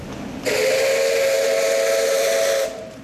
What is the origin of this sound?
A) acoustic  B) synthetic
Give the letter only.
A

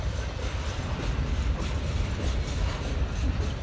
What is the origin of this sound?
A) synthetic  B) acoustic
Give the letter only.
B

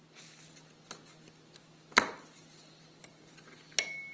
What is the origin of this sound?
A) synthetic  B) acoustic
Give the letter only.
B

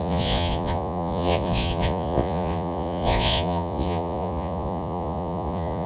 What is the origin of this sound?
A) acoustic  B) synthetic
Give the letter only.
B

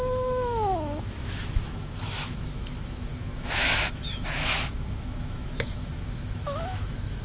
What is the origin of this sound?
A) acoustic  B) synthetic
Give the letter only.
B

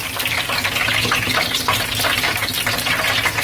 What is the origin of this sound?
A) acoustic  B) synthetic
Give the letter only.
A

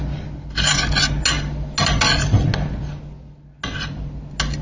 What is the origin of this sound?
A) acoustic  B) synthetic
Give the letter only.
A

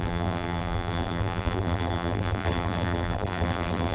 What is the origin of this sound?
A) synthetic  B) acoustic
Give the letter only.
A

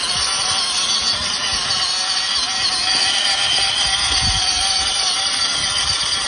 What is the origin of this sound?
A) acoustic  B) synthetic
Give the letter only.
A